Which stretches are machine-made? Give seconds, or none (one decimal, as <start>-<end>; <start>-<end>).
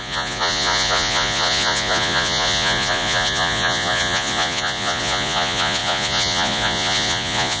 0.0-7.6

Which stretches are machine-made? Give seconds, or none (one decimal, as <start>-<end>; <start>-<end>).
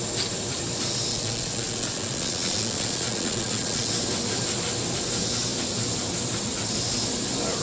1.1-3.9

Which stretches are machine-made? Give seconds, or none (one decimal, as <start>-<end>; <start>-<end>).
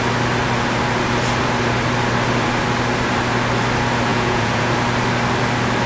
4.1-4.7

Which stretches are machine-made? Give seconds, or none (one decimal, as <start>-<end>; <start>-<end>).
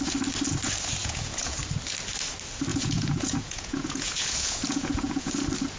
1.0-1.6; 2.7-5.3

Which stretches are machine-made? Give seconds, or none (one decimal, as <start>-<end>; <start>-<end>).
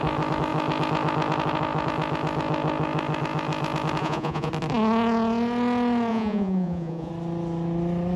4.0-4.5; 6.1-7.1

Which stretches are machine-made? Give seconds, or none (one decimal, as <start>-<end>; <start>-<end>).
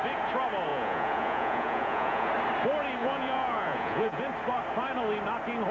0.7-2.3; 3.0-4.2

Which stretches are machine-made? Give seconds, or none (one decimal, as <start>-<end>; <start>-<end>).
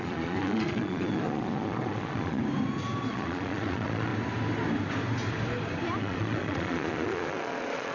0.0-2.4; 3.1-4.1; 6.0-7.9